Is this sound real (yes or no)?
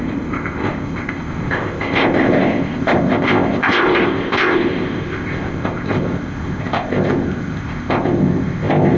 no